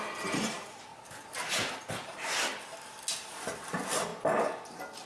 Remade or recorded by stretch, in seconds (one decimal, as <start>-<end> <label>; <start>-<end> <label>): 0.0-2.5 remade; 2.5-3.1 recorded; 3.1-4.1 remade; 4.1-5.1 recorded